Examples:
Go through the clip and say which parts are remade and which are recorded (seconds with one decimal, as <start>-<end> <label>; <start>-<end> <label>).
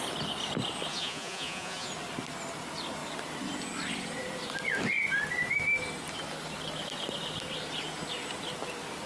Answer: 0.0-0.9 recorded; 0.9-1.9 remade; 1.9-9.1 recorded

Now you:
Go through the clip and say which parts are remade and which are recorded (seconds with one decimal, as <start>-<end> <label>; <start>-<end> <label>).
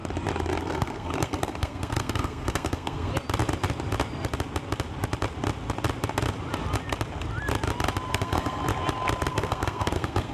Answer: 0.0-0.6 recorded; 0.6-3.1 remade; 3.1-8.1 recorded; 8.1-8.6 remade; 8.6-9.3 recorded; 9.3-10.3 remade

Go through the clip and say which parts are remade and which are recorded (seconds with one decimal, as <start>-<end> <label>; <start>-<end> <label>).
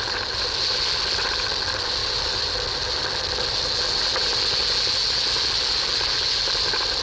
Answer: 0.0-7.0 recorded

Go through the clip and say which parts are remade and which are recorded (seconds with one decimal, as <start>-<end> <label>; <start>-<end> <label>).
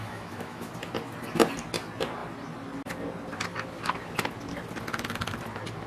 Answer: 0.0-0.7 remade; 0.7-5.9 recorded